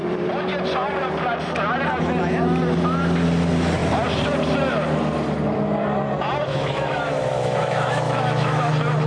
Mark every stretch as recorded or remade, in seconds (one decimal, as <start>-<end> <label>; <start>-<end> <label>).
0.0-6.5 recorded; 6.5-8.7 remade; 8.7-9.1 recorded